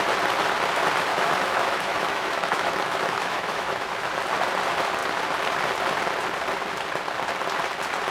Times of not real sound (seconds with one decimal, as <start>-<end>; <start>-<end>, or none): 1.1-4.1